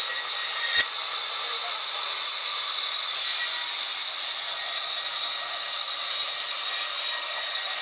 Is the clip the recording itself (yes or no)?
yes